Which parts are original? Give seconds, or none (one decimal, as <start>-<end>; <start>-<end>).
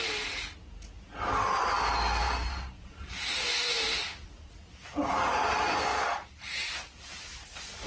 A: 0.0-2.2; 3.1-5.9; 7.5-7.9